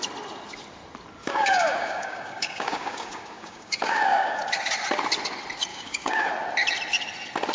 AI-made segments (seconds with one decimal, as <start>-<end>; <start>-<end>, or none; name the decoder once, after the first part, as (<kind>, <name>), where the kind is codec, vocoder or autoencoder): 1.2-4.4 (codec, DAC); 5.7-6.3